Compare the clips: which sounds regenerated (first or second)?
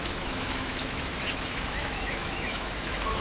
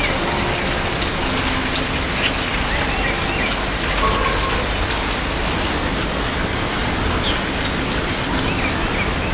first